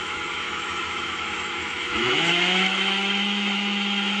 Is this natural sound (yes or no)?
no